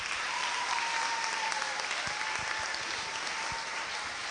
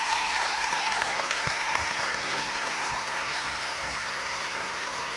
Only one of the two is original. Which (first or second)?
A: first